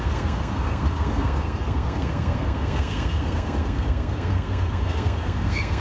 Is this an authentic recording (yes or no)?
no